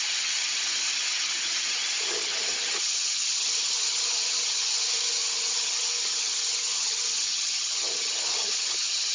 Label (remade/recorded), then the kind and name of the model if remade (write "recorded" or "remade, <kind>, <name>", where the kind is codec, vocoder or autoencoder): remade, vocoder, HiFi-GAN